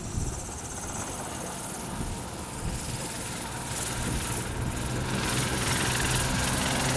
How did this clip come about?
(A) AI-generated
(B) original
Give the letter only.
B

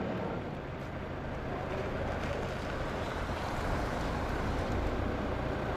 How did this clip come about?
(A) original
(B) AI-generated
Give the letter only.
A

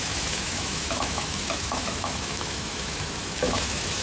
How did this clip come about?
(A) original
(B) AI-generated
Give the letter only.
B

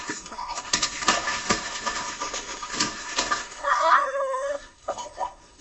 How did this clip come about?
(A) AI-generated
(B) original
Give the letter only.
A